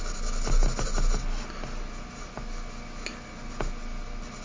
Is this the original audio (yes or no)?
yes